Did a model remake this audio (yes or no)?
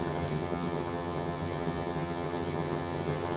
yes